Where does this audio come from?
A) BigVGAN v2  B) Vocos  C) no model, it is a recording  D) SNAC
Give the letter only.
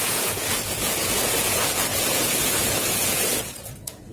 B